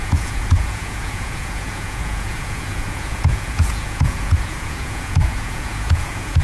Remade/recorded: remade